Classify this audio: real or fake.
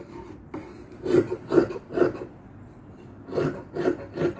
real